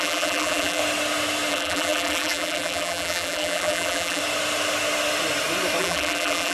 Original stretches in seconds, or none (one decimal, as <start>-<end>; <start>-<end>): 0.8-1.5; 4.2-5.8